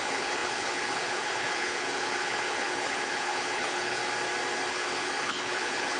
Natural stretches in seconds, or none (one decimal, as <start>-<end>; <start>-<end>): 4.0-4.7